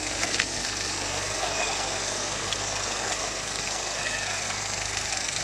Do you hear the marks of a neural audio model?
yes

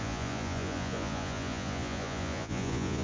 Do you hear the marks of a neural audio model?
yes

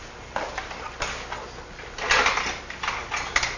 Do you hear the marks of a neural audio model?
no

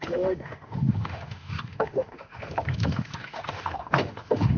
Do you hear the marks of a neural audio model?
yes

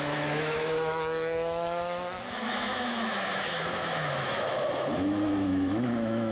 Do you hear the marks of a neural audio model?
yes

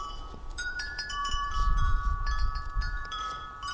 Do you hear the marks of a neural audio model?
yes